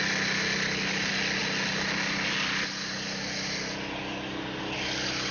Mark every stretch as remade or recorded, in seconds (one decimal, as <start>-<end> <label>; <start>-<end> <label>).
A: 0.0-5.3 recorded